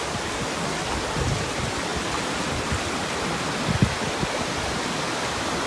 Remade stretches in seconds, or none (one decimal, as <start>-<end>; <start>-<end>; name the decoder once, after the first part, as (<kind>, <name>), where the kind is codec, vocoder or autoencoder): none